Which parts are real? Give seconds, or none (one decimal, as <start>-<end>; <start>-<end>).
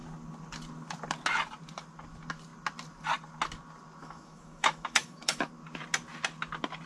0.0-4.0; 5.5-6.9